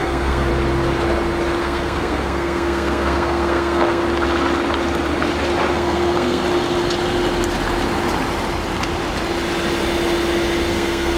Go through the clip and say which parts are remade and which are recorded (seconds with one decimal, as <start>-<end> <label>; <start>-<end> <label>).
0.0-0.5 remade; 0.5-1.6 recorded; 1.6-4.0 remade; 4.0-5.7 recorded; 5.7-6.4 remade; 6.4-10.7 recorded; 10.7-11.2 remade

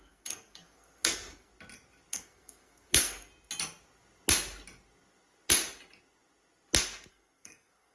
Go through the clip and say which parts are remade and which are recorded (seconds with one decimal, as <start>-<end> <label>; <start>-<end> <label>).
0.0-1.5 remade; 1.5-2.1 recorded; 2.1-3.3 remade; 3.3-7.1 recorded; 7.1-7.9 remade

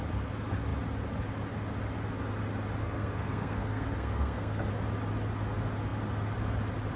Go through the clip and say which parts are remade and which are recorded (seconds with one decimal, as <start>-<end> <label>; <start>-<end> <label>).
0.0-2.8 recorded; 2.8-4.7 remade; 4.7-7.0 recorded

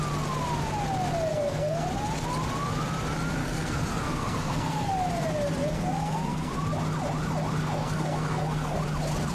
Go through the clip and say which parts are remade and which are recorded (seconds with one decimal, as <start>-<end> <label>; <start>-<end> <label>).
0.0-1.3 recorded; 1.3-1.9 remade; 1.9-3.4 recorded; 3.4-4.9 remade; 4.9-5.6 recorded; 5.6-6.5 remade; 6.5-7.6 recorded; 7.6-8.8 remade; 8.8-9.3 recorded

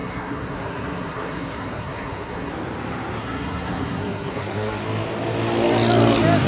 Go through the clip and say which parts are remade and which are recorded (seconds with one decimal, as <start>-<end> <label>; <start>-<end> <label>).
0.0-2.5 remade; 2.5-3.2 recorded; 3.2-4.8 remade; 4.8-6.5 recorded